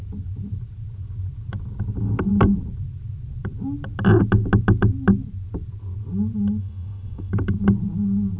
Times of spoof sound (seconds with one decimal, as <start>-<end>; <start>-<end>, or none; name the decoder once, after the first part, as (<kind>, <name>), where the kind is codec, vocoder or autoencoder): 6.6-7.3 (autoencoder, DAC-VAE)